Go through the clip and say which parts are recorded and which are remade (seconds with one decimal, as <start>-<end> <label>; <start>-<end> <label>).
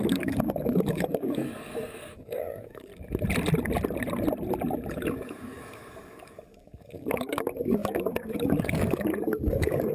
0.0-2.9 remade; 2.9-4.9 recorded; 4.9-9.9 remade